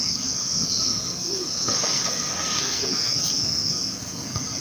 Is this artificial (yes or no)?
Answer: yes